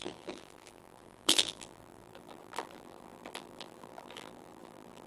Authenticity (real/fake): fake